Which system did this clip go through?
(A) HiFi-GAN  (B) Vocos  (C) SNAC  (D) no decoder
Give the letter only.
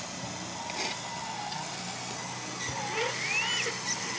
D